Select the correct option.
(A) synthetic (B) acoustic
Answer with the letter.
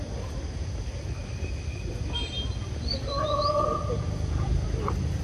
B